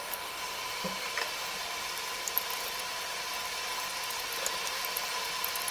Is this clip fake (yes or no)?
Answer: no